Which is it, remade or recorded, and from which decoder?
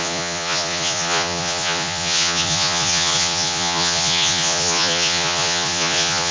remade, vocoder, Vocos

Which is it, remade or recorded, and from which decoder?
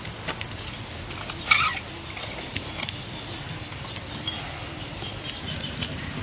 recorded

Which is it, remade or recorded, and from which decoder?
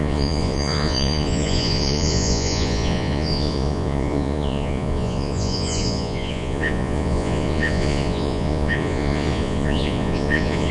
remade, vocoder, Vocos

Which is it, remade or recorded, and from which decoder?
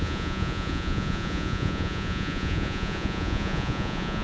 remade, vocoder, Vocos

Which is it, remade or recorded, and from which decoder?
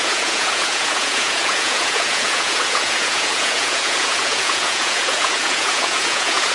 remade, vocoder, Vocos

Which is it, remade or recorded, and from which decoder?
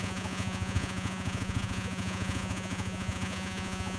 remade, vocoder, Vocos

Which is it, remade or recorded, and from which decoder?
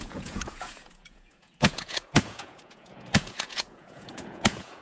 remade, vocoder, Vocos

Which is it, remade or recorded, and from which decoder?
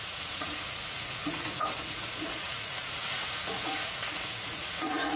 remade, vocoder, Vocos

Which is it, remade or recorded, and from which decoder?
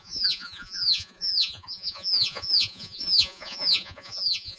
remade, vocoder, Vocos